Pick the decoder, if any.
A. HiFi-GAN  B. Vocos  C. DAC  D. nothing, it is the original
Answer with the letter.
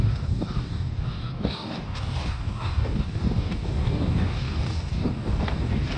C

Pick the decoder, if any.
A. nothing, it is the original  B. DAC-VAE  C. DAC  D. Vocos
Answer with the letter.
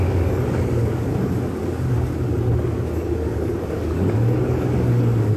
C